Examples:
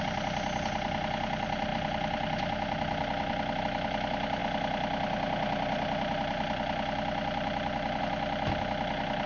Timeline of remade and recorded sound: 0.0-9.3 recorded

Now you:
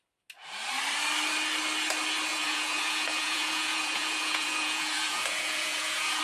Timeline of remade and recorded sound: 0.0-2.3 recorded; 2.3-6.2 remade

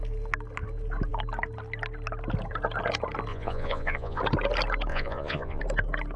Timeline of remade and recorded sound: 0.0-3.3 recorded; 3.3-4.2 remade; 4.2-4.9 recorded; 4.9-5.6 remade; 5.6-6.2 recorded

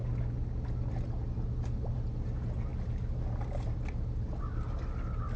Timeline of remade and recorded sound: 0.0-5.4 recorded

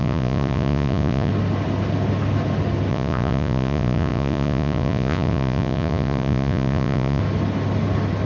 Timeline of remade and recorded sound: 0.0-1.3 remade; 1.3-2.9 recorded; 2.9-7.2 remade; 7.2-8.3 recorded

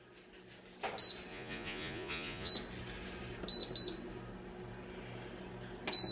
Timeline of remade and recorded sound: 0.0-1.3 recorded; 1.3-2.5 remade; 2.5-6.1 recorded

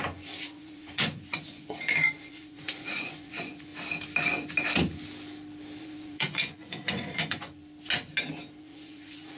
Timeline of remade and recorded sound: 0.0-3.7 remade; 3.7-5.8 recorded; 5.8-7.6 remade; 7.6-8.6 recorded; 8.6-9.4 remade

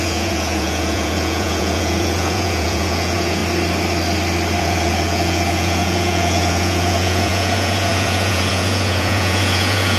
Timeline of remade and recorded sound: 0.0-3.4 remade; 3.4-4.6 recorded; 4.6-10.0 remade